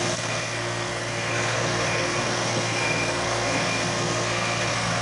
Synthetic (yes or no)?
yes